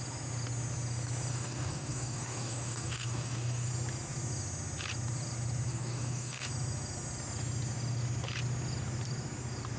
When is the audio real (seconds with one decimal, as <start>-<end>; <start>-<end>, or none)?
0.0-1.3; 3.7-5.7; 6.5-9.8